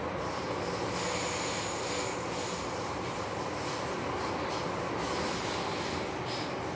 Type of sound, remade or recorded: recorded